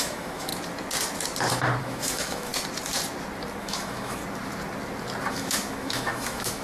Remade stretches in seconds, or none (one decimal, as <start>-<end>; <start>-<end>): 0.0-0.5; 1.8-2.5; 3.6-4.2; 5.3-6.6